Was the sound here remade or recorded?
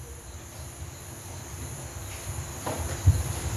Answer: remade